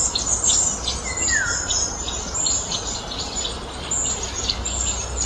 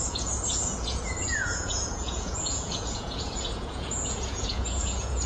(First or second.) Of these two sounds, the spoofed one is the second